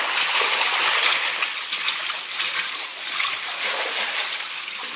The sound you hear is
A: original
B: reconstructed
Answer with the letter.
A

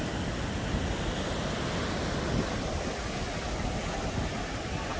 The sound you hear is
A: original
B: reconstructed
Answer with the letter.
A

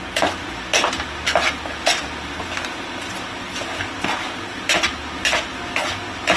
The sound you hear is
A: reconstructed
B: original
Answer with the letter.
B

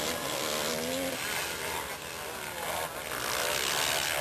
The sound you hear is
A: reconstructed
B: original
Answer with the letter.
B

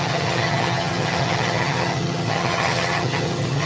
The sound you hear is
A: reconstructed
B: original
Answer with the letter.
A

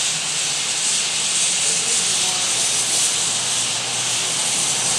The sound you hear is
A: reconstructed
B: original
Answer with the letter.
B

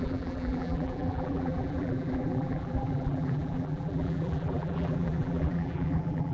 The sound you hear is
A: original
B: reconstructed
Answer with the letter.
B